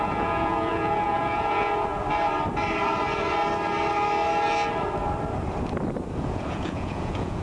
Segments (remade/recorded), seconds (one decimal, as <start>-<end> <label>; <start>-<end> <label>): 0.0-1.9 remade; 1.9-6.2 recorded; 6.2-7.4 remade